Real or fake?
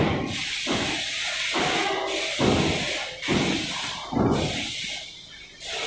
real